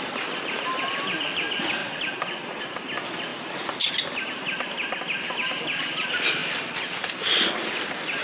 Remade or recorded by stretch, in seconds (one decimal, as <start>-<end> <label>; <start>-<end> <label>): 0.0-8.2 recorded